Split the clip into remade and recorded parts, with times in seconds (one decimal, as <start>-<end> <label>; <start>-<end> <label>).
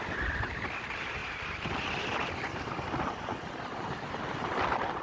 0.0-5.0 recorded